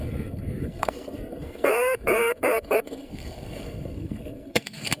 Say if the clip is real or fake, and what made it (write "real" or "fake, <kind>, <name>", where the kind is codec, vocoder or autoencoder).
fake, codec, SNAC